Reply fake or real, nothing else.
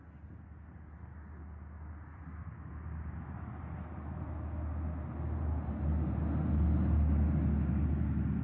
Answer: real